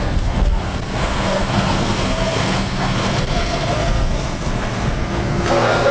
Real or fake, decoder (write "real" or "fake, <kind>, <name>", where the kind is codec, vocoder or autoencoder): fake, codec, SNAC